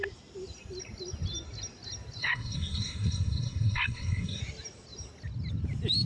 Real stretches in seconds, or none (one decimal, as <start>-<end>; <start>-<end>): 0.0-2.2; 4.4-6.1